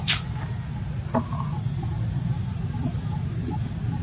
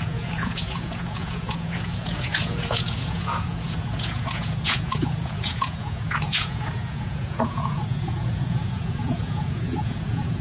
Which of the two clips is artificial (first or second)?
second